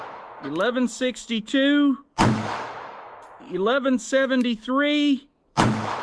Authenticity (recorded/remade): remade